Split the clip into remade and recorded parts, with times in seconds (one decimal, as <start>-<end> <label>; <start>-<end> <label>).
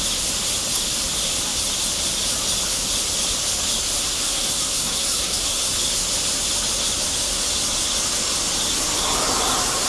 0.0-4.0 recorded; 4.0-5.7 remade; 5.7-9.9 recorded